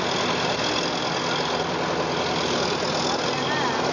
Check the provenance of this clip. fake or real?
real